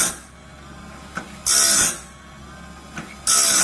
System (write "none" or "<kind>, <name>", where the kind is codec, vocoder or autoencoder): none